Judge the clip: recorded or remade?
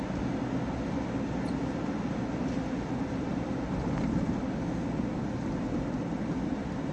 recorded